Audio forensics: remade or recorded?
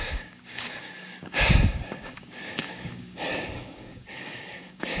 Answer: remade